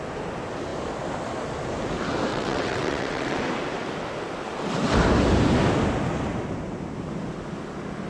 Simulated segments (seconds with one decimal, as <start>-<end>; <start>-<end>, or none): 2.3-3.4